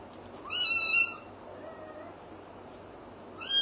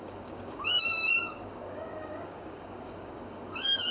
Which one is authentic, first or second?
first